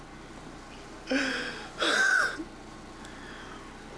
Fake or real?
real